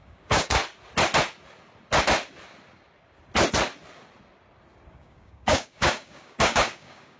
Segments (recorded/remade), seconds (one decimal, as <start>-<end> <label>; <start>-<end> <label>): 0.0-0.6 remade; 0.6-4.9 recorded; 4.9-7.2 remade